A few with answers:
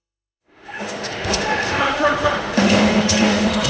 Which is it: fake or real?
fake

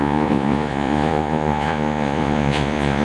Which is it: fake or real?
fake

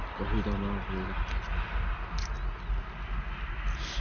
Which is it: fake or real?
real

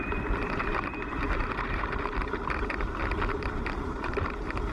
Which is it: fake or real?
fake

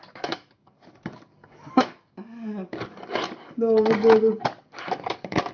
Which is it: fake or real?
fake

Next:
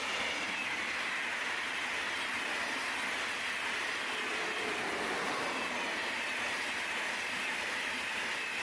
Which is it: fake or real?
real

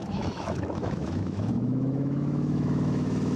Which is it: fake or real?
fake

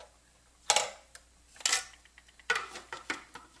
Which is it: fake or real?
real